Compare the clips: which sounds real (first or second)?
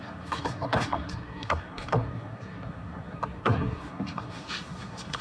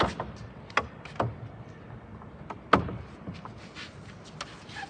second